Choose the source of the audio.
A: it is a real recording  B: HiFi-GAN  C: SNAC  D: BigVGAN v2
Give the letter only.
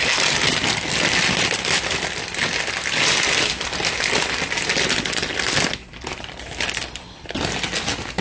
A